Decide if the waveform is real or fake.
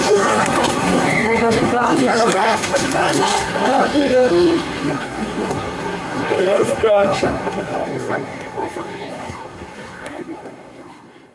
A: fake